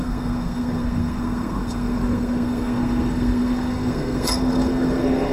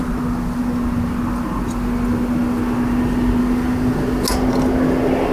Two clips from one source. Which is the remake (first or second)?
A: first